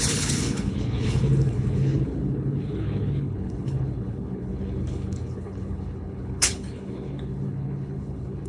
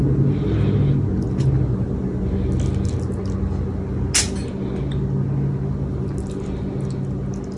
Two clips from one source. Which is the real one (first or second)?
second